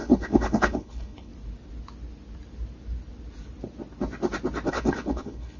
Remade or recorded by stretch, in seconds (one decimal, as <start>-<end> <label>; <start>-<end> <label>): 0.0-1.3 remade; 1.3-4.7 recorded; 4.7-5.6 remade